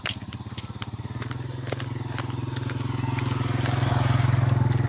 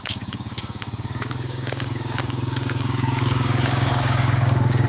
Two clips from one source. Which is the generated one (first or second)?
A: second